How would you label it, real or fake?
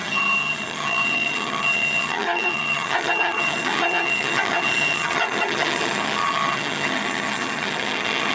fake